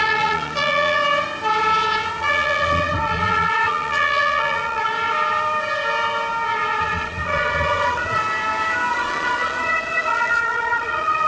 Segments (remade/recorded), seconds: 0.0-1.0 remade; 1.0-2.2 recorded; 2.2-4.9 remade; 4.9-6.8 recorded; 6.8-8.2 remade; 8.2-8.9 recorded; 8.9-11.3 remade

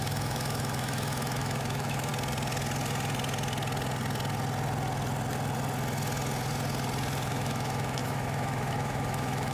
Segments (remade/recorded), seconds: 0.0-2.1 remade; 2.1-7.3 recorded; 7.3-9.5 remade

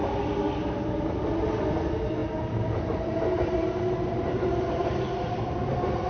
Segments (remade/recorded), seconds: 0.0-6.1 recorded

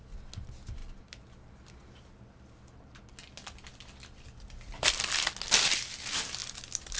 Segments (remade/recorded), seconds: 0.0-7.0 recorded

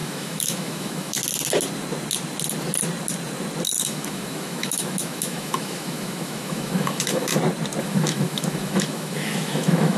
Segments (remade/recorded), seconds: 0.0-1.2 remade; 1.2-3.8 recorded; 3.8-7.3 remade; 7.3-7.8 recorded; 7.8-10.0 remade

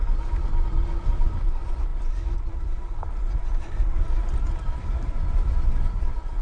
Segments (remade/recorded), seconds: 0.0-6.4 recorded